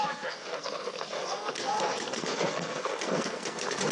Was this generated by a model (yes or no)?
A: yes